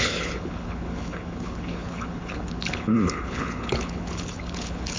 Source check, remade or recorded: remade